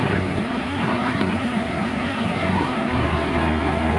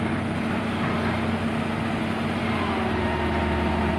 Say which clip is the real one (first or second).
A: second